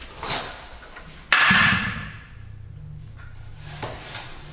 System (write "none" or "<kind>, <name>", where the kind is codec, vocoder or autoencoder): none